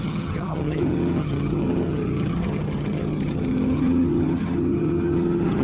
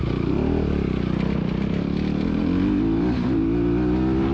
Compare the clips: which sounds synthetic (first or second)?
first